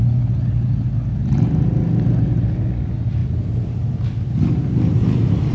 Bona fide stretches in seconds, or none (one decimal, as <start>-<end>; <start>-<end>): 0.0-5.5